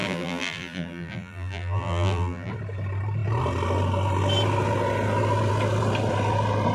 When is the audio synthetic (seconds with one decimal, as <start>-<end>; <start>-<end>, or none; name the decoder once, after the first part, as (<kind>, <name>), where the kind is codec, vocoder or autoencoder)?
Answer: 0.0-2.5 (vocoder, BigVGAN v2)